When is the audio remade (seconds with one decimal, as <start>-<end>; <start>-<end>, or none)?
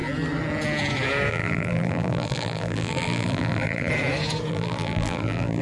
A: 1.3-3.9; 4.5-5.6